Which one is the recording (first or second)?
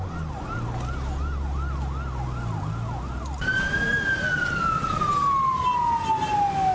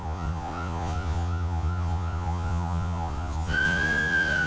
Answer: first